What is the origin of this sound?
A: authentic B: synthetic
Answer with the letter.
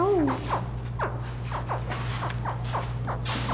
A